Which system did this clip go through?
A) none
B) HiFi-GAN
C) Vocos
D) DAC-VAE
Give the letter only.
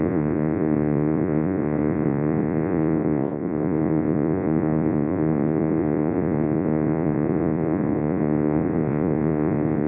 C